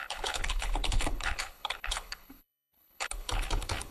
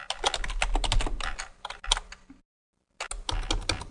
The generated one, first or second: first